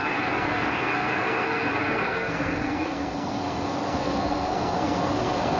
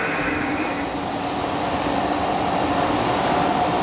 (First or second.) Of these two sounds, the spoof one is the first